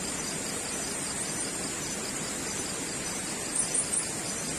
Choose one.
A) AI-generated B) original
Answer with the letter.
A